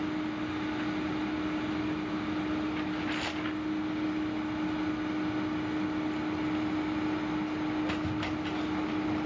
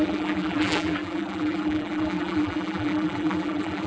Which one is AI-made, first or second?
second